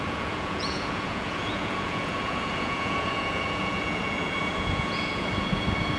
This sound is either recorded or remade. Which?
remade